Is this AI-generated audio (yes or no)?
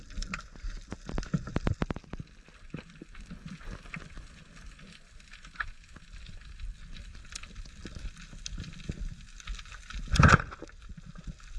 no